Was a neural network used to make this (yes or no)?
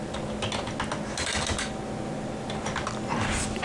no